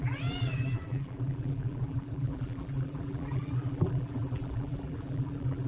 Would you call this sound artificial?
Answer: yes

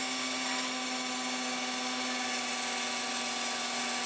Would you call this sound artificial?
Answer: no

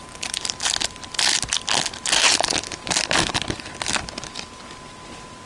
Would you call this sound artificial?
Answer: no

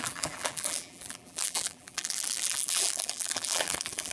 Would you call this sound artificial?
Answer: yes